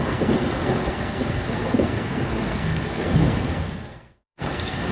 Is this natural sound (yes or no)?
no